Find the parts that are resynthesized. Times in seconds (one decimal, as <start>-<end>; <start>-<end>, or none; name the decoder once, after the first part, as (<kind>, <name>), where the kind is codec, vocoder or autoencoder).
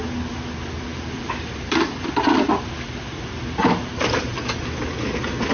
0.9-4.2 (vocoder, BigVGAN v2)